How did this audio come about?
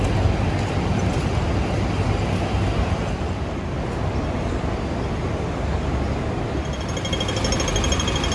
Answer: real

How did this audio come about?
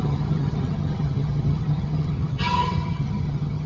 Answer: fake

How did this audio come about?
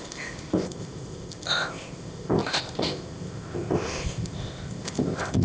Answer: fake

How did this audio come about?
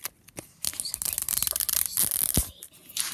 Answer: real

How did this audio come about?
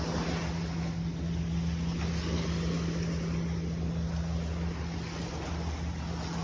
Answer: real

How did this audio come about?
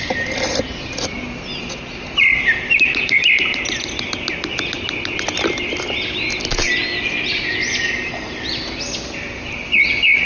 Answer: real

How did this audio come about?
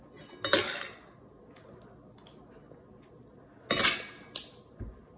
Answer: real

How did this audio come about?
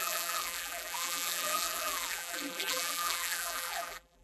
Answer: fake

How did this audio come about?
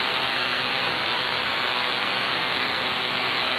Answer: fake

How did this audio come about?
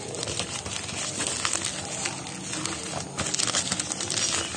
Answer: real